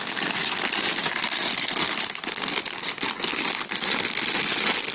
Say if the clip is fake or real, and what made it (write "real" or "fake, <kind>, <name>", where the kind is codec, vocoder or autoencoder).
real